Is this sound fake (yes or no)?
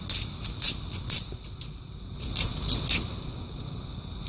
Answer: no